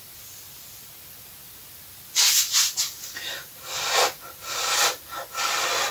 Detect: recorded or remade recorded